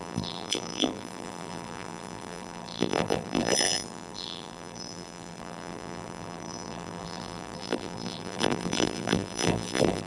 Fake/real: fake